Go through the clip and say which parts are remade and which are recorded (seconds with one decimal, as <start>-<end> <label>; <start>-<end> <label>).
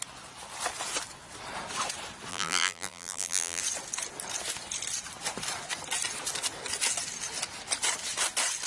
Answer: 0.0-2.3 recorded; 2.3-3.6 remade; 3.6-8.7 recorded